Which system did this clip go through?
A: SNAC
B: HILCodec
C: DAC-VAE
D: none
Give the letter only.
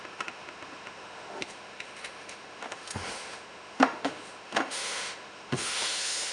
C